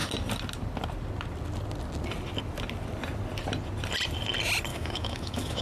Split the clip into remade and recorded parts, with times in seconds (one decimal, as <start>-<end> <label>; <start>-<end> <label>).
0.0-4.7 recorded; 4.7-5.6 remade